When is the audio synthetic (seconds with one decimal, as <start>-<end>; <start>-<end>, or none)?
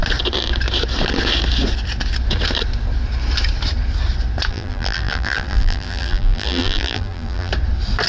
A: 4.5-7.5